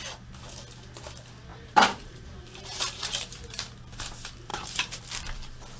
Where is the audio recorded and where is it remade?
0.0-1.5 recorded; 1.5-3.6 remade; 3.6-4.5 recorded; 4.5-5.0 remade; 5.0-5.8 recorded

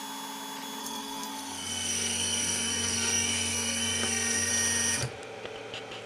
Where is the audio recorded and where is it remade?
0.0-0.8 recorded; 0.8-4.5 remade; 4.5-6.1 recorded

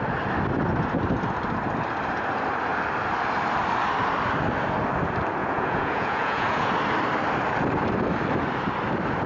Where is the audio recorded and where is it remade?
0.0-5.4 recorded; 5.4-6.7 remade; 6.7-9.3 recorded

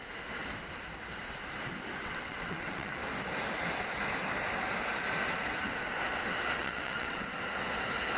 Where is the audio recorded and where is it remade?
0.0-2.0 recorded; 2.0-3.0 remade; 3.0-6.3 recorded; 6.3-7.3 remade; 7.3-8.2 recorded

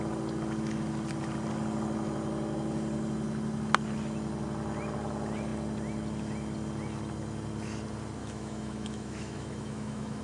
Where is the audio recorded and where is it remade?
0.0-8.2 recorded; 8.2-10.2 remade

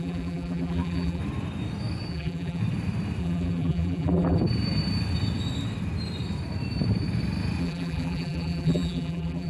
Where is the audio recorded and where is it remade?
0.0-1.2 remade; 1.2-2.1 recorded; 2.1-2.6 remade; 2.6-3.2 recorded; 3.2-4.4 remade; 4.4-7.6 recorded; 7.6-9.5 remade

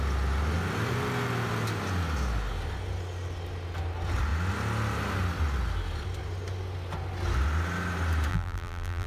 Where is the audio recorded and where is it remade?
0.0-8.3 recorded; 8.3-9.1 remade